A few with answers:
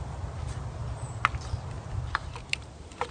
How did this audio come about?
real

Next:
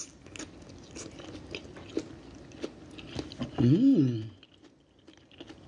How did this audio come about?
real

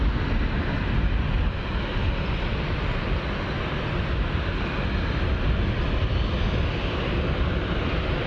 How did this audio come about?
real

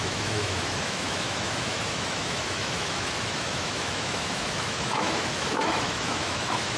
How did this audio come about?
fake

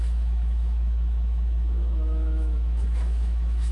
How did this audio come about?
fake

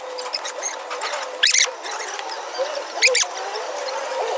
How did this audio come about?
real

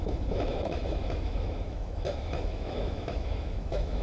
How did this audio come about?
fake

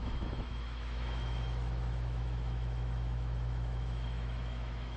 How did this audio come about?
fake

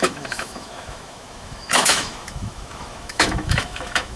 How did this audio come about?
fake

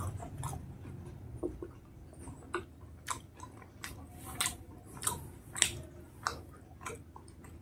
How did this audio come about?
real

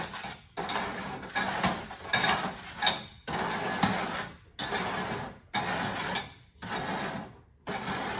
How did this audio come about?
real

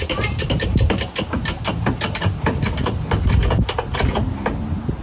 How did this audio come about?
real